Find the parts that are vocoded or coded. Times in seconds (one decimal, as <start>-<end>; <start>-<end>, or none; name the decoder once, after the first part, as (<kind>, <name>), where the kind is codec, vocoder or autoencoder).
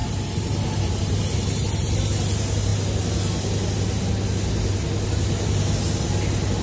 none